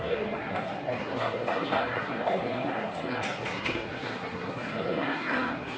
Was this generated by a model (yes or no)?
yes